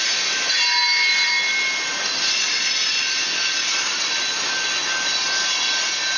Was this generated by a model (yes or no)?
no